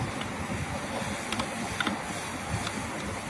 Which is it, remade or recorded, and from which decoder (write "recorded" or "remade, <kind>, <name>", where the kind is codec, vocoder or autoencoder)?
recorded